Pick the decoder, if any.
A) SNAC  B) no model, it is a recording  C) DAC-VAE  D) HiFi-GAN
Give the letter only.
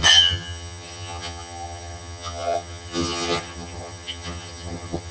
D